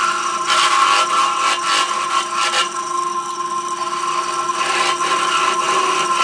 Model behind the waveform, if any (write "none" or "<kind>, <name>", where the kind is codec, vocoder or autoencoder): none